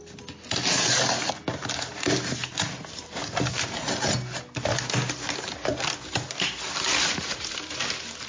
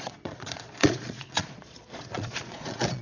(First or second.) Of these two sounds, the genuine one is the first